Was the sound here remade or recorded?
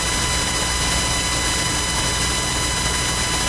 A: recorded